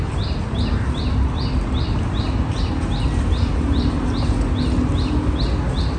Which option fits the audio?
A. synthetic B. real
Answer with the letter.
B